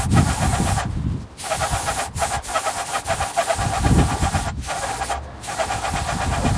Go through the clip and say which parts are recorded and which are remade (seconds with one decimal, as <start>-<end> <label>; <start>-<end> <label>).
0.0-0.5 recorded; 0.5-4.5 remade; 4.5-6.6 recorded